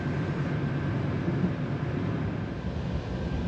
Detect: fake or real real